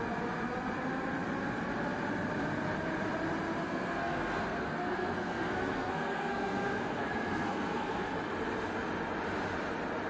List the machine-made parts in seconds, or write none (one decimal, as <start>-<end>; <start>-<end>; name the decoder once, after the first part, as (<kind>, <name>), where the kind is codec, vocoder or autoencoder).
3.6-8.1 (codec, SNAC)

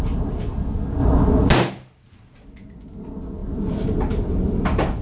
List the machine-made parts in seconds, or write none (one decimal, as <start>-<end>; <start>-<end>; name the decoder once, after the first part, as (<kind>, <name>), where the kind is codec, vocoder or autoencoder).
none

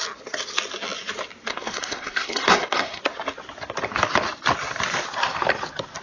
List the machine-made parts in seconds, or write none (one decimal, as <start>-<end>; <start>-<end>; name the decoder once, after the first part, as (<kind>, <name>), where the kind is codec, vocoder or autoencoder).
1.5-3.0 (codec, SNAC)

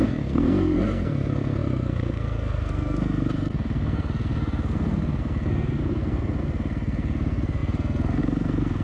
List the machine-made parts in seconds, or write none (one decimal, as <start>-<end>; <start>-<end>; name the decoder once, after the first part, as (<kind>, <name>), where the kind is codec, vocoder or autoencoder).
0.0-8.8 (codec, SNAC)

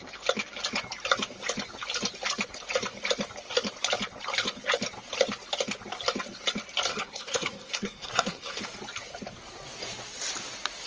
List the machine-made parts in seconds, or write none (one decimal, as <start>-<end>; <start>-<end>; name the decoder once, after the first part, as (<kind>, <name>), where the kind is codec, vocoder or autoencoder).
6.9-8.6 (codec, SNAC)

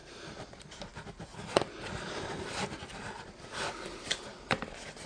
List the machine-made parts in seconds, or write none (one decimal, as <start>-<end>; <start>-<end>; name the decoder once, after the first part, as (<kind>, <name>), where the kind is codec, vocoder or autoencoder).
none

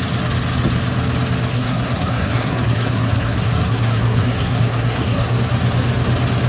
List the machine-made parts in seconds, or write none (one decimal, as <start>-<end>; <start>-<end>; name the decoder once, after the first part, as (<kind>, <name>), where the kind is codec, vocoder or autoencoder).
1.5-5.4 (codec, SNAC)

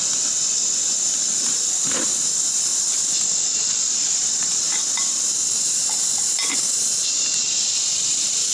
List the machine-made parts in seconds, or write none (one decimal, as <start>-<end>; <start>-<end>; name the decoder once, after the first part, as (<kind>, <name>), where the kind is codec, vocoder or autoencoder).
none